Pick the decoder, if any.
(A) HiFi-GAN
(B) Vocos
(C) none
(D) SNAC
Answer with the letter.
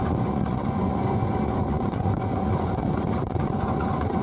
B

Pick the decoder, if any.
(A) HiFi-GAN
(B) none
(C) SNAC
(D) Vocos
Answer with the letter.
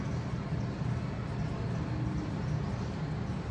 B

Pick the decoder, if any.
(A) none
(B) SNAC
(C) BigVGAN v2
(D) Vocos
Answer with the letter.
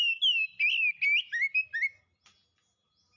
A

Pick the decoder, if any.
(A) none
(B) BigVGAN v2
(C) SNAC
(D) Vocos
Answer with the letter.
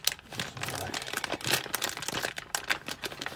A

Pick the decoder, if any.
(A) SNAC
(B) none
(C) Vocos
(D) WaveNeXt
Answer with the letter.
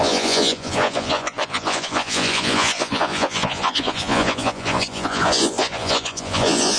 C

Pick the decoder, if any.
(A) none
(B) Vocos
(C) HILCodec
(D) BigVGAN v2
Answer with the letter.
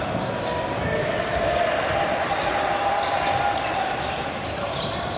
A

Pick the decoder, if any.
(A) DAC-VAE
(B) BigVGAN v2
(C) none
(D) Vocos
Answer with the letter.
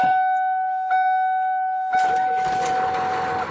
C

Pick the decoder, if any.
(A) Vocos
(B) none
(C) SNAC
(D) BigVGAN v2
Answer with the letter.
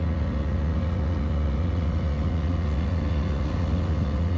A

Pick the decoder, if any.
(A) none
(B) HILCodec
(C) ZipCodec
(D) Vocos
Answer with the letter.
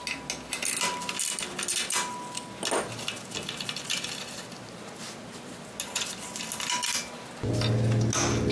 A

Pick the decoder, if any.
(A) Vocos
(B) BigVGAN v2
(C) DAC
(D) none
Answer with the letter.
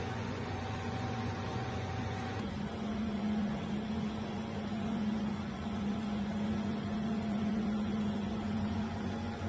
A